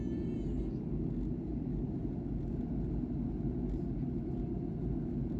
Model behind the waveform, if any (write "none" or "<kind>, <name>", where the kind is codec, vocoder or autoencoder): none